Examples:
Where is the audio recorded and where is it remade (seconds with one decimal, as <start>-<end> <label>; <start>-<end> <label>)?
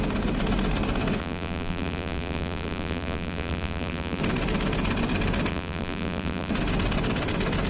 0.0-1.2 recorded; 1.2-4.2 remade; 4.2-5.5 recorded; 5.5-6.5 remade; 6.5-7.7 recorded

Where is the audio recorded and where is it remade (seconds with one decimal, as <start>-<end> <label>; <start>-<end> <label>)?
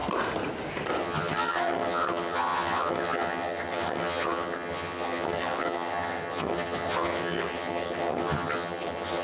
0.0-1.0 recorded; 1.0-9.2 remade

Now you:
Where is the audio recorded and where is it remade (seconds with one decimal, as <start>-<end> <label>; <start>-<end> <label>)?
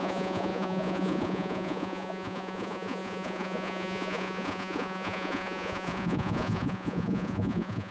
0.0-7.9 remade